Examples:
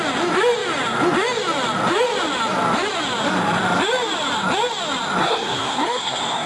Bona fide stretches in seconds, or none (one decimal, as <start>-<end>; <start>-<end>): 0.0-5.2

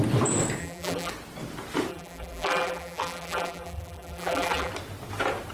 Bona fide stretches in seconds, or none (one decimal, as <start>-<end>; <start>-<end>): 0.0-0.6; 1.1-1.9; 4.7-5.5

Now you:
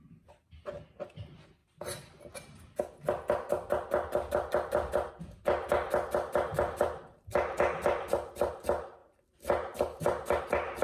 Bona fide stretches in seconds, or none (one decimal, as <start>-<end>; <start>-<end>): 0.0-6.5; 8.5-9.0; 10.4-10.8

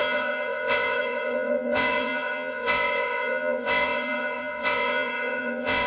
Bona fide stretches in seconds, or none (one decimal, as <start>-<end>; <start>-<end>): none